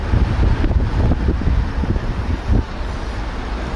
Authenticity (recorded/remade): recorded